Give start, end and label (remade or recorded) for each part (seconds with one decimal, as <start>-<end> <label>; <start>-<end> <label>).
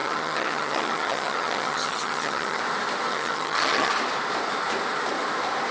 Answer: 0.0-2.6 remade; 2.6-3.1 recorded; 3.1-3.9 remade; 3.9-5.7 recorded